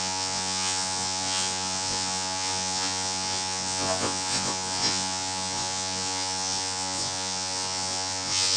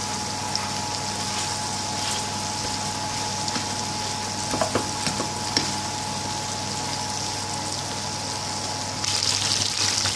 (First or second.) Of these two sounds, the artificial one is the first